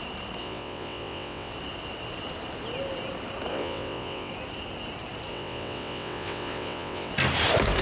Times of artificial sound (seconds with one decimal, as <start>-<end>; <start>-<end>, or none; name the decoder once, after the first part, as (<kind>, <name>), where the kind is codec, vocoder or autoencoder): 0.4-1.5 (vocoder, WaveNeXt); 3.5-4.3; 5.3-7.1